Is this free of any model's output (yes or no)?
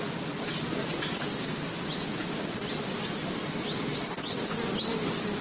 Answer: yes